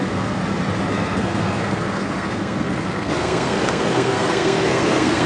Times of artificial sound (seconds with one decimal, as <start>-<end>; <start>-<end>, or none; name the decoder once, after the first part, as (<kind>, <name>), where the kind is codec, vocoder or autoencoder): 0.0-0.4 (codec, SNAC); 0.9-5.3